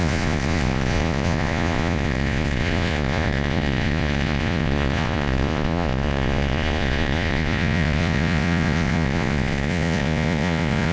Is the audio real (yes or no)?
no